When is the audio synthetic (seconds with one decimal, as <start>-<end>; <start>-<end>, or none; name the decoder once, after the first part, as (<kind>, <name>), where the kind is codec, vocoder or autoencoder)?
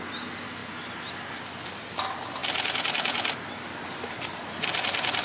none